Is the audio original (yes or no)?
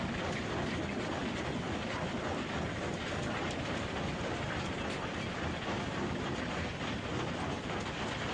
yes